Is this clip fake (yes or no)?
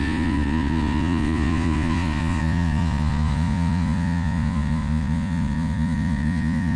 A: yes